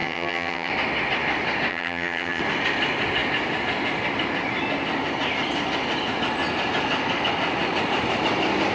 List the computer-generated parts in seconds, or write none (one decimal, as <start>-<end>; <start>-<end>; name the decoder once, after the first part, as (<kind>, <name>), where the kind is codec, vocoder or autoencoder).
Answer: 0.0-0.7 (vocoder, HiFi-GAN); 1.7-2.4